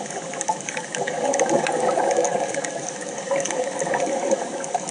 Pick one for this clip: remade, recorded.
remade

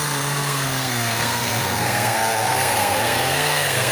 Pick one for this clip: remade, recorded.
remade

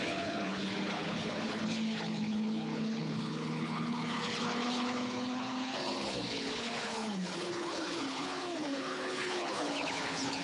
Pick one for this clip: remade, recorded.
remade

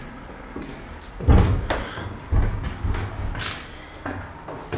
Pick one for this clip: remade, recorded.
recorded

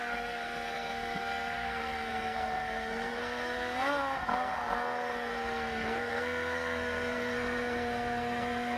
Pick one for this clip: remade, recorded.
remade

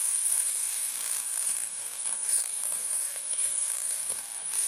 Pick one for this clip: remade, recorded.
remade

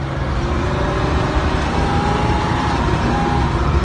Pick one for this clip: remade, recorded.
remade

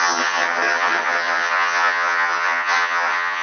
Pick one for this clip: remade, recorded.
remade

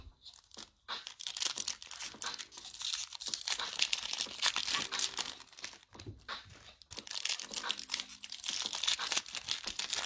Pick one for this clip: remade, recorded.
recorded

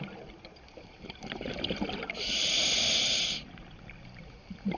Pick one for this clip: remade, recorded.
recorded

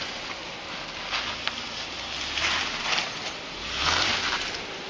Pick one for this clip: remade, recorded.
recorded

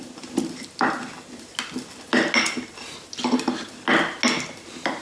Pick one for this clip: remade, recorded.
recorded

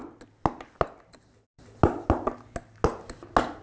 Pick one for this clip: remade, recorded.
recorded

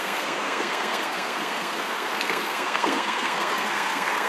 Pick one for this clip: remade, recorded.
remade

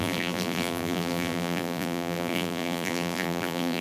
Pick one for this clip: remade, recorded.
remade